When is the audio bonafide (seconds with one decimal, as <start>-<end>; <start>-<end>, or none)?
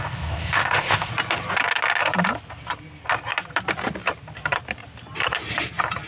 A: 1.1-6.1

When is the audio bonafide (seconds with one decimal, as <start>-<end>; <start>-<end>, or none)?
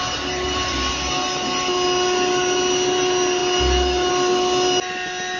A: 0.0-5.4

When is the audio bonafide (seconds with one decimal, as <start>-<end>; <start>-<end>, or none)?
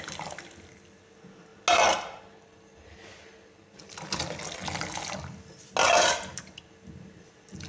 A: 0.0-7.7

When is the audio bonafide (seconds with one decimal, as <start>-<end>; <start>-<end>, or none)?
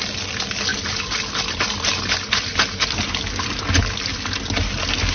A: 0.0-5.1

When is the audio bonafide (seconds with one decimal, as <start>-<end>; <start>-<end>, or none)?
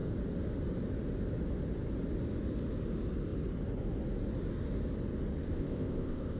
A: 0.0-5.4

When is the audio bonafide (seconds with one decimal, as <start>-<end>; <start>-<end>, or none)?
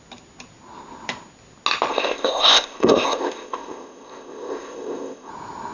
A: 0.0-1.9; 5.3-5.7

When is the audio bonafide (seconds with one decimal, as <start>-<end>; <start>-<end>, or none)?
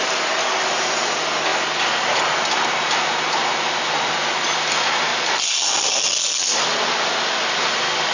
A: 0.0-8.1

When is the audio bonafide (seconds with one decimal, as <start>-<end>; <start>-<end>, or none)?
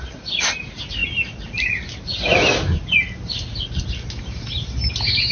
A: 0.0-5.3